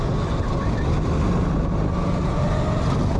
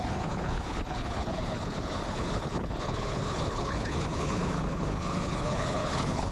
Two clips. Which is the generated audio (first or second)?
second